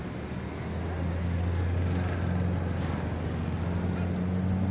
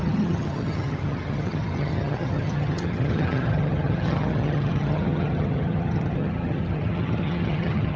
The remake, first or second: second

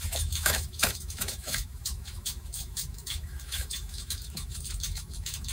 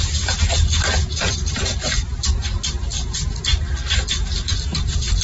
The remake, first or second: first